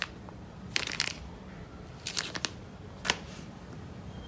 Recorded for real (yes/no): yes